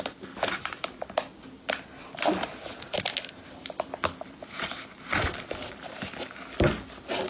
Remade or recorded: recorded